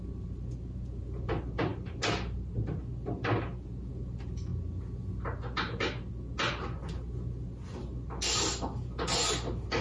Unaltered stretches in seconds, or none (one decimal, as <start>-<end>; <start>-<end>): 0.0-9.8